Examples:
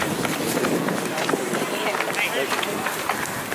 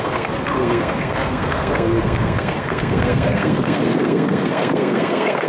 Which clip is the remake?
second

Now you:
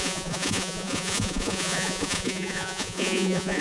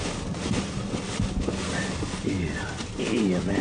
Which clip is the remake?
first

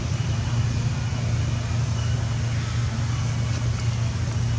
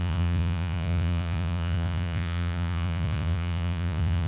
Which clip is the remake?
second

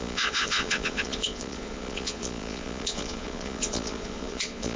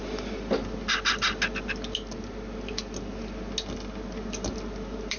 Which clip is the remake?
first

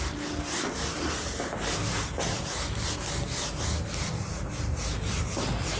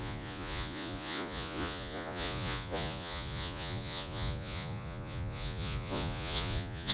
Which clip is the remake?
second